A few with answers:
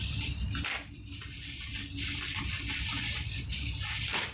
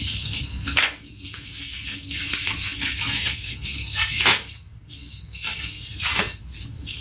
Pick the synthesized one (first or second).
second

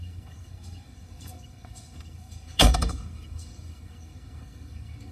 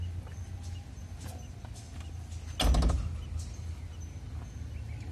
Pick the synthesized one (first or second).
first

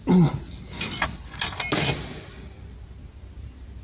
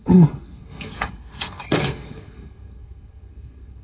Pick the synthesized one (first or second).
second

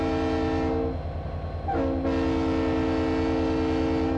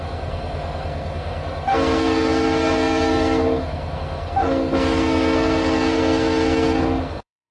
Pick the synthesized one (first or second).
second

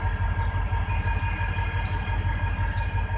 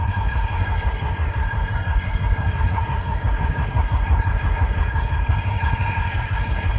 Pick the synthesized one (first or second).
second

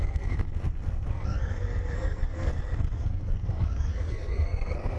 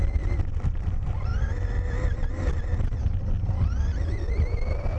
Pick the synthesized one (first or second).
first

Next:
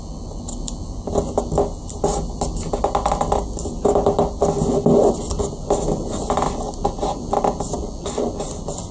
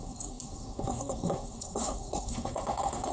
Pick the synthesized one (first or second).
second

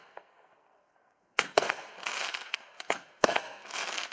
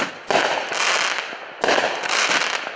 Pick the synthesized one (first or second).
first